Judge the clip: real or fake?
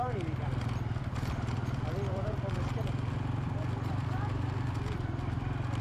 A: fake